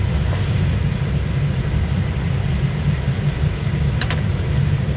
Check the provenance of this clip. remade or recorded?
remade